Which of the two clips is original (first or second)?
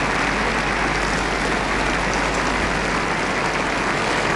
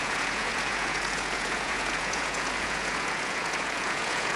first